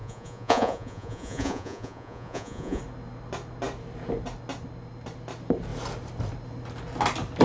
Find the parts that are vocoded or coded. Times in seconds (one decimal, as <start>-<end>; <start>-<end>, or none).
0.0-2.8